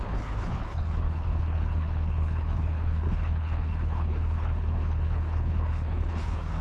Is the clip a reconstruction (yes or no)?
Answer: yes